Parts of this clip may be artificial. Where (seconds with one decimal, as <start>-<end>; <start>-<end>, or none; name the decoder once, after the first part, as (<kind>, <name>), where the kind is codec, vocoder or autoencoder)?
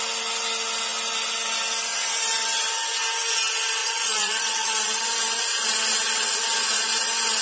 3.8-5.0 (vocoder, Vocos)